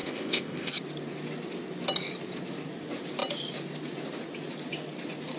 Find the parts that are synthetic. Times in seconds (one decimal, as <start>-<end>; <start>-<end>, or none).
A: 0.0-0.7